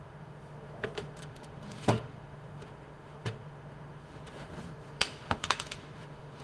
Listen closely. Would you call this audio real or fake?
fake